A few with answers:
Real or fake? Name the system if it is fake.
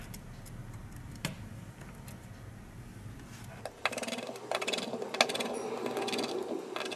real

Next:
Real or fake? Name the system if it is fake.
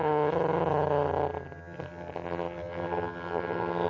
fake, vocoder, HiFi-GAN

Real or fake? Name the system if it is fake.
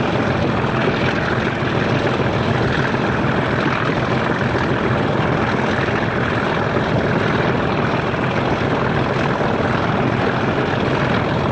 real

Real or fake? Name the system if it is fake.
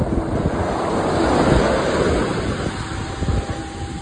real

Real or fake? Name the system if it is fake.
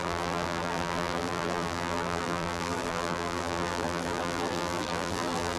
fake, vocoder, BigVGAN v2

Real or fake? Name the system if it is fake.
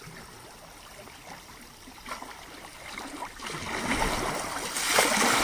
real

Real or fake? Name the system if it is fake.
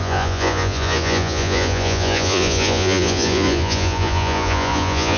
fake, vocoder, Vocos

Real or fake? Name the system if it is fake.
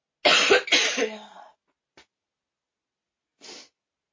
real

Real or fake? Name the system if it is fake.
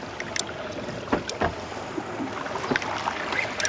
real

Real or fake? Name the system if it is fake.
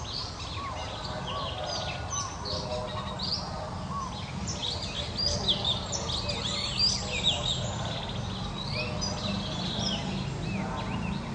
real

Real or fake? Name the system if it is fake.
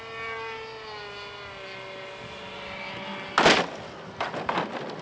real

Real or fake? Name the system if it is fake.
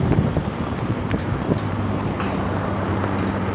fake, vocoder, BigVGAN v2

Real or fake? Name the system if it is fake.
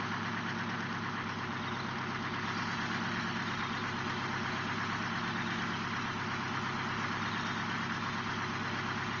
real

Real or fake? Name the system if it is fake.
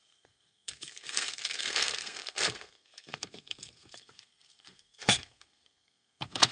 fake, codec, SNAC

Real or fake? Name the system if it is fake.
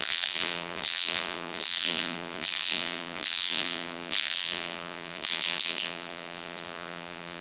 fake, vocoder, BigVGAN v2